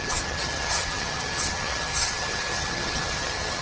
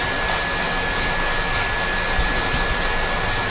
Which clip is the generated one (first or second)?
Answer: first